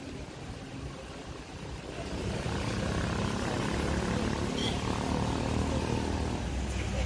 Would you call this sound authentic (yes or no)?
yes